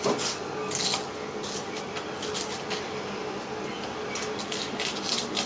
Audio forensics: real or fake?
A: real